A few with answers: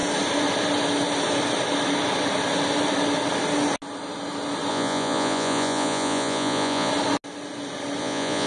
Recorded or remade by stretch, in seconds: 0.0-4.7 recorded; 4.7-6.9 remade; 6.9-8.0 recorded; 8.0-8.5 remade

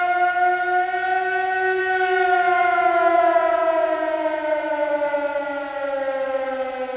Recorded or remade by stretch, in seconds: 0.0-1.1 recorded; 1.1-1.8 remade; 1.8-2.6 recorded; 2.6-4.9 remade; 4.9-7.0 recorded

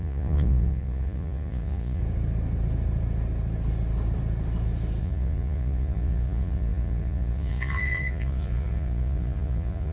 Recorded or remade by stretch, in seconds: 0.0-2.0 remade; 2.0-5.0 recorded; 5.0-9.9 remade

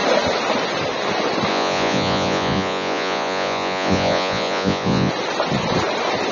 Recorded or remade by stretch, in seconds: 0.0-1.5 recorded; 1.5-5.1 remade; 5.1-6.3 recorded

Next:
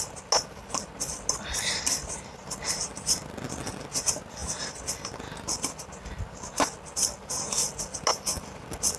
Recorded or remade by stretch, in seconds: 0.0-9.0 recorded

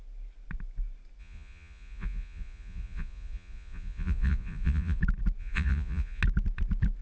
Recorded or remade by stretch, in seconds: 0.0-1.2 recorded; 1.2-5.0 remade; 5.0-5.4 recorded; 5.4-6.2 remade; 6.2-7.0 recorded

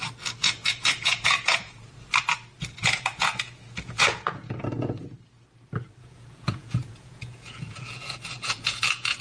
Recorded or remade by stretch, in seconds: 0.0-0.4 recorded; 0.4-1.9 remade; 1.9-2.8 recorded; 2.8-5.1 remade; 5.1-6.0 recorded; 6.0-9.2 remade

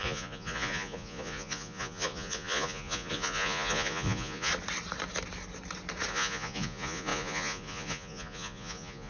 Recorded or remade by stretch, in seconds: 0.0-4.5 remade; 4.5-6.1 recorded; 6.1-9.1 remade